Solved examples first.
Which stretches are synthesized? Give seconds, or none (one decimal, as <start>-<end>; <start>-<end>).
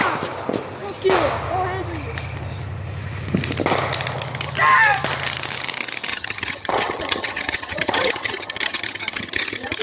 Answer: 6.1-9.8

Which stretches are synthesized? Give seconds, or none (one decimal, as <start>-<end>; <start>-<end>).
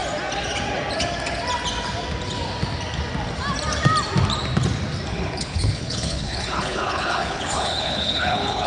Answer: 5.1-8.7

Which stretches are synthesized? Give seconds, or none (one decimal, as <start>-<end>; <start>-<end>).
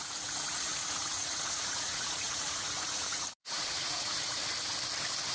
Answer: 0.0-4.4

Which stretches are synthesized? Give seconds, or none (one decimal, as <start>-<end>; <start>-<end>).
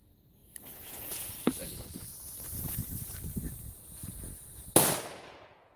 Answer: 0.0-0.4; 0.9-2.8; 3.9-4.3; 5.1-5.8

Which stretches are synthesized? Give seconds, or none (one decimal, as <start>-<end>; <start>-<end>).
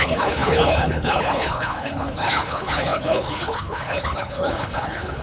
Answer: 0.0-5.2